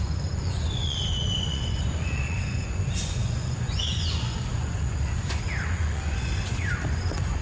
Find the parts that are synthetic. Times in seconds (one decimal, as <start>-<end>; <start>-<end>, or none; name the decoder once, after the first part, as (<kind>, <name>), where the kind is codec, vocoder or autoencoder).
0.0-7.4 (vocoder, Vocos)